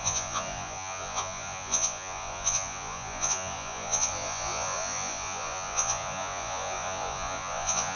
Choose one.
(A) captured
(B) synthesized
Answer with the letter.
B